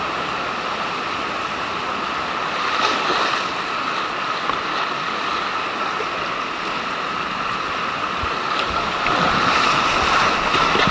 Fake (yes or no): no